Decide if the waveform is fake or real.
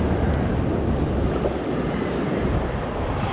real